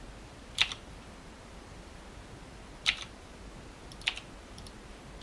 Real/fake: real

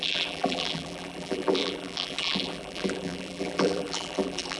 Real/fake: fake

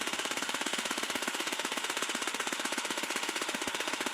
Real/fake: fake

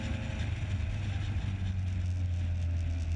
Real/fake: real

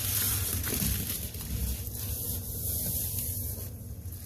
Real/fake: fake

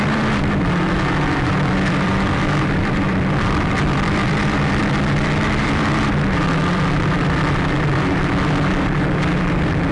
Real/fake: fake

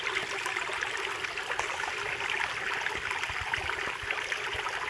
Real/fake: real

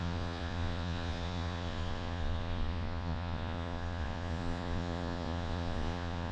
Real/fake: fake